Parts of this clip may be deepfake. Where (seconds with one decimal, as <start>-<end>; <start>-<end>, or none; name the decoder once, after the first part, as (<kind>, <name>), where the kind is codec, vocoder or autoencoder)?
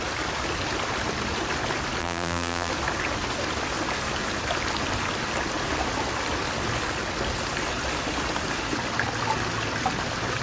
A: 2.0-2.7 (vocoder, BigVGAN v2)